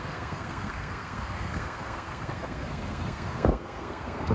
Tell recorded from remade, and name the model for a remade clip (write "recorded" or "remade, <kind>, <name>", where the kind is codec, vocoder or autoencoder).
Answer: remade, codec, SNAC